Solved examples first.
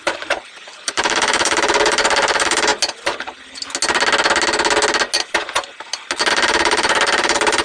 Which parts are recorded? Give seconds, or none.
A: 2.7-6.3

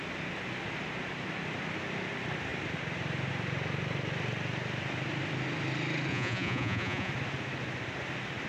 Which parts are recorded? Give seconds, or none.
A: 0.0-6.1; 7.1-8.5